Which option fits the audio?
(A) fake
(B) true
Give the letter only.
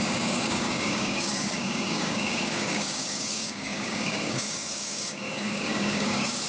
A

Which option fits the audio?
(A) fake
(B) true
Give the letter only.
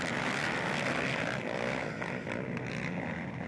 B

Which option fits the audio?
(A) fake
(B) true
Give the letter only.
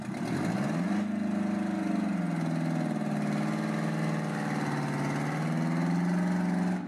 B